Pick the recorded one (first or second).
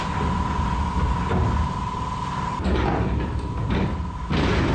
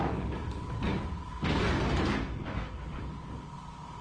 first